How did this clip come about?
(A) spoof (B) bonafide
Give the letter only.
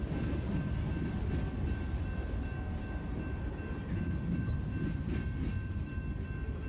B